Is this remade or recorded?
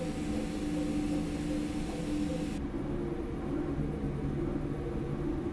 recorded